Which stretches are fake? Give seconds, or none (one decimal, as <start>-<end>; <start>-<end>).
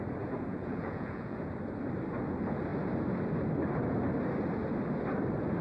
0.5-1.4